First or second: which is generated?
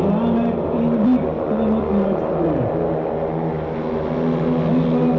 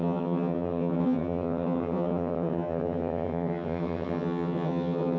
second